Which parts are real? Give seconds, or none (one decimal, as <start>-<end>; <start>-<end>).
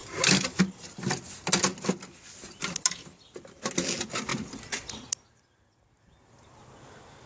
0.6-7.3